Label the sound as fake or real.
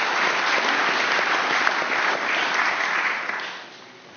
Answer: real